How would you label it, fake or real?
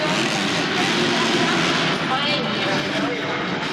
real